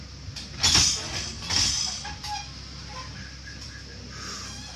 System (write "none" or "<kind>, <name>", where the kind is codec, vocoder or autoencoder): none